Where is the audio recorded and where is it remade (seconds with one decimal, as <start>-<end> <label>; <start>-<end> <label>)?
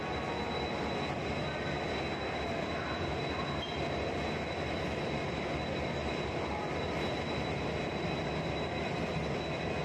0.0-9.8 recorded